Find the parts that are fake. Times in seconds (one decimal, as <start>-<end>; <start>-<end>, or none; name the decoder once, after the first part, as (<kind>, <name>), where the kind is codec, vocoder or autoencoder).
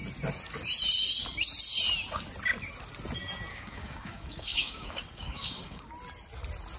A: 3.5-5.9 (codec, DAC)